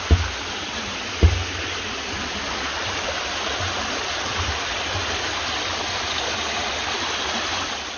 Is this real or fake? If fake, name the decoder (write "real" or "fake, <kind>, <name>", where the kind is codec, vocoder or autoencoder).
real